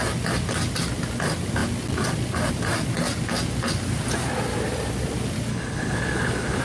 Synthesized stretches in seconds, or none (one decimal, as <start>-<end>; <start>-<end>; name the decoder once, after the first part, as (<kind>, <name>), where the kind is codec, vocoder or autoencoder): 5.5-6.6 (codec, HILCodec)